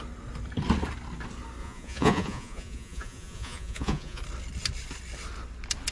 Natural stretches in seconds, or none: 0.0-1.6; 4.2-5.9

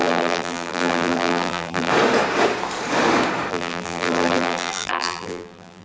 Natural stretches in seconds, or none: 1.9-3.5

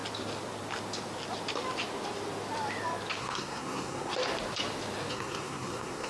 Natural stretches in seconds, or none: 0.0-3.2; 4.1-5.1

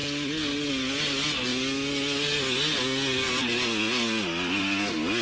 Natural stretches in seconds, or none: 0.0-5.2

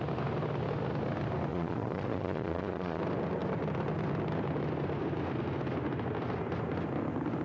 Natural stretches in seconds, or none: 0.0-1.5; 3.0-7.4